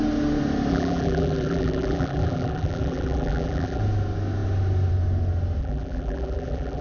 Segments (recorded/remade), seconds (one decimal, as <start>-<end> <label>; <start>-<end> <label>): 0.0-0.7 recorded; 0.7-3.8 remade; 3.8-5.6 recorded; 5.6-6.8 remade